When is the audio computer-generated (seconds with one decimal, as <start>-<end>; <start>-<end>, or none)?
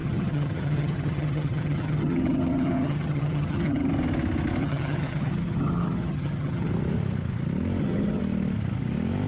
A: 0.0-3.9; 4.6-6.7; 7.8-8.2